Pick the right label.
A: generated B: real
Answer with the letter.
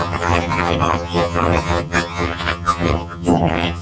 A